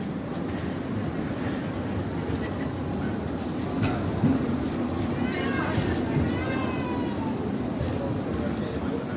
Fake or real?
real